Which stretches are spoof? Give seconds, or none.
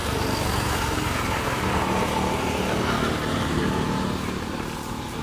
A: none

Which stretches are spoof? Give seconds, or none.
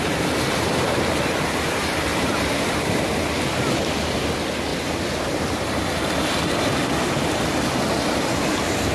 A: 2.1-3.4 (vocoder, BigVGAN v2); 4.7-5.8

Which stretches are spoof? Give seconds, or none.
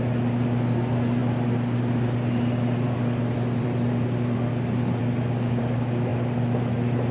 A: 0.0-5.0 (vocoder, BigVGAN v2); 5.6-7.1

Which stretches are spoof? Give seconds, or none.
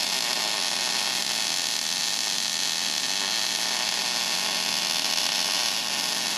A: none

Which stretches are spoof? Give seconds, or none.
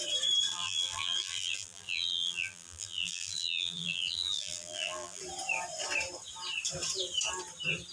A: 0.5-5.2 (vocoder, BigVGAN v2)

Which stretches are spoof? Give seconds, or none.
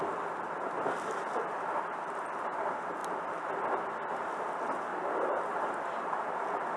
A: 0.0-2.0 (vocoder, BigVGAN v2); 4.9-6.8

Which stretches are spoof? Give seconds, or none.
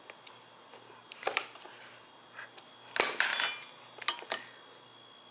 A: 1.0-1.9 (vocoder, BigVGAN v2); 3.3-4.3